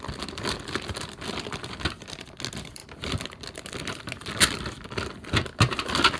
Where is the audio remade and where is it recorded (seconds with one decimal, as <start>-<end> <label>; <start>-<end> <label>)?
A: 0.0-6.2 recorded